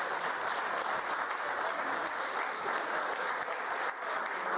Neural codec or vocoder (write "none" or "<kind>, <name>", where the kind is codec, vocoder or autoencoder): none